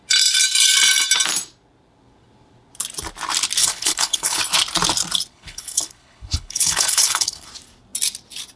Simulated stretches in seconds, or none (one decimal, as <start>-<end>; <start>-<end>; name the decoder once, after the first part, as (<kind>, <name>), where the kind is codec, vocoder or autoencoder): 3.6-4.4 (codec, HILCodec); 5.3-7.5